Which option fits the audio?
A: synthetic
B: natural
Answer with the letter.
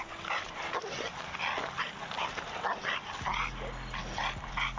B